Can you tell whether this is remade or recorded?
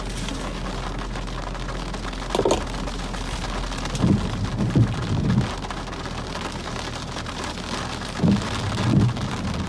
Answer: recorded